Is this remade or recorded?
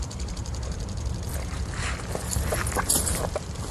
remade